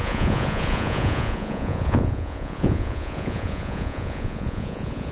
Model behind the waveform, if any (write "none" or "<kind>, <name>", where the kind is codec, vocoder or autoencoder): vocoder, Vocos